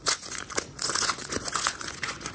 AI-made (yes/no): yes